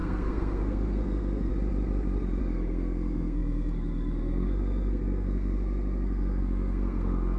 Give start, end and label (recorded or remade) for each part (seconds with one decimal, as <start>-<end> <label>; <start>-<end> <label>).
0.0-1.5 remade; 1.5-2.4 recorded; 2.4-7.4 remade